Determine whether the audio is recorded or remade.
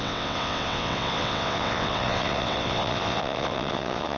remade